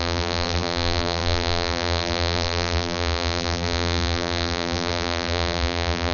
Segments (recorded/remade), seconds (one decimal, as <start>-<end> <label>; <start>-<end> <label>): 0.0-6.1 remade